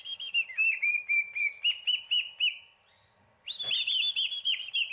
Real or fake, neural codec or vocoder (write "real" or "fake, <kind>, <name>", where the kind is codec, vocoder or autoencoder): real